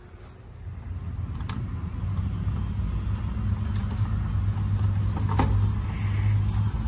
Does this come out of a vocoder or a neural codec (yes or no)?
no